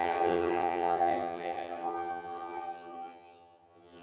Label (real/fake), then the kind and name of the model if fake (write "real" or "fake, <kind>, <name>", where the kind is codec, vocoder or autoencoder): fake, vocoder, HiFi-GAN